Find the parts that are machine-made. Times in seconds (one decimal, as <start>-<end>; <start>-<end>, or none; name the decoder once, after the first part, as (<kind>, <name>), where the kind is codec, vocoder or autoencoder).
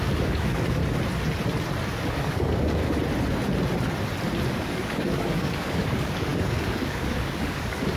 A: 0.0-0.8 (codec, DAC); 1.8-2.8; 4.5-8.0